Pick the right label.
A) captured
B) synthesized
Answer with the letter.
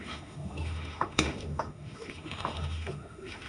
B